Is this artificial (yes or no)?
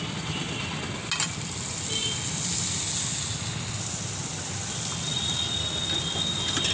no